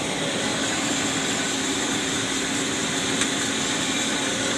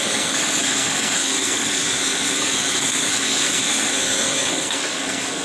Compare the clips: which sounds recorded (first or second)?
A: first